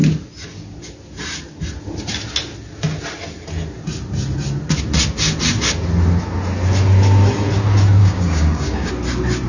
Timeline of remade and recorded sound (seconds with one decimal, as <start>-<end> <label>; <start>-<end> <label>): 0.0-8.0 recorded; 8.0-8.9 remade; 8.9-9.5 recorded